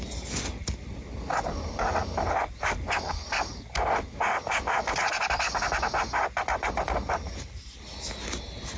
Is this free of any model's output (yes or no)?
yes